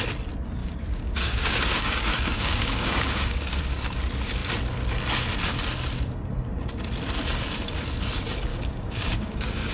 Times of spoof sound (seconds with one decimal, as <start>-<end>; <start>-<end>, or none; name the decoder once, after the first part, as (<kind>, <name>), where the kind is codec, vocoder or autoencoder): 0.6-3.6 (codec, DAC); 8.5-9.7